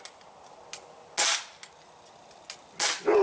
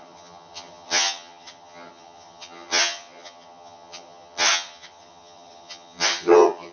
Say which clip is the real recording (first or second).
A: first